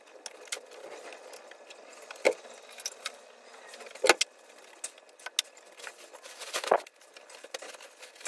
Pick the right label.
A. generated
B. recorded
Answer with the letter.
B